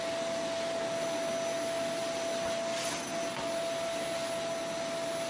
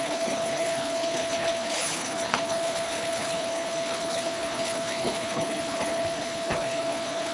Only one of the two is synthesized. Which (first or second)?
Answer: second